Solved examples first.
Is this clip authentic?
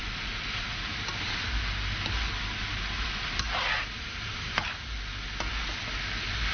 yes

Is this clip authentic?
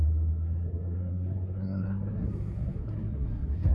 no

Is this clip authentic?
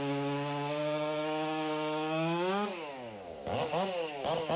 no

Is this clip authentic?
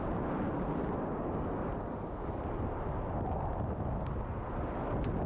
yes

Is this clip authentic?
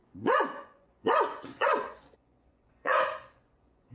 no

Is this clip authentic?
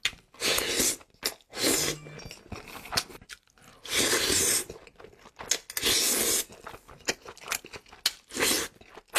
yes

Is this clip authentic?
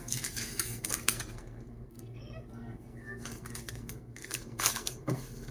no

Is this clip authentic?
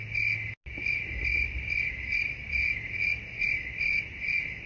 yes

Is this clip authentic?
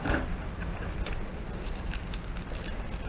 yes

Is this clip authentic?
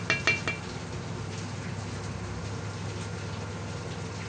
yes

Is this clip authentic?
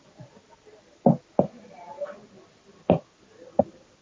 yes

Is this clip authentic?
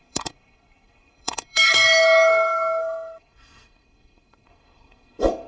no